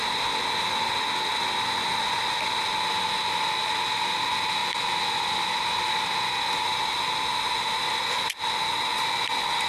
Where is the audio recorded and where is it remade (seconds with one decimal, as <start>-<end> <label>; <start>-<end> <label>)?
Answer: 0.0-9.7 recorded